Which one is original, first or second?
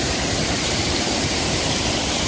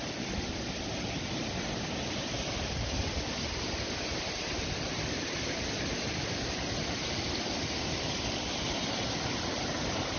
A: second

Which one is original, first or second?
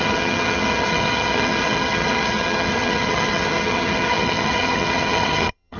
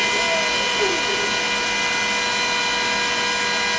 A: second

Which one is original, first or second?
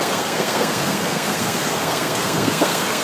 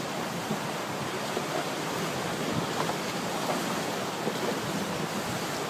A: second